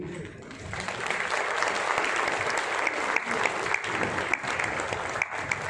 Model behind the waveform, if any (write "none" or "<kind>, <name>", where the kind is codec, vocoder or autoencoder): none